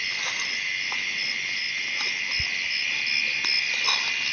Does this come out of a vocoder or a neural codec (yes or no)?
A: no